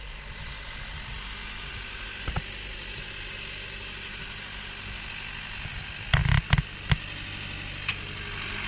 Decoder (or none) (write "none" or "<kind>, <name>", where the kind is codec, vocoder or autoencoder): none